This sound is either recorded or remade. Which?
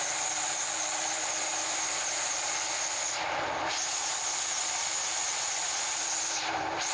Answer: remade